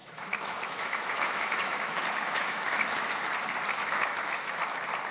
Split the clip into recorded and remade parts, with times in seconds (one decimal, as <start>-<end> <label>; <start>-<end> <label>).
0.0-3.1 remade; 3.1-3.8 recorded; 3.8-4.6 remade; 4.6-5.1 recorded